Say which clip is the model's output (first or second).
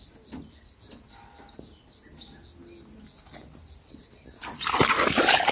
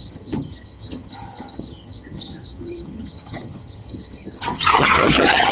second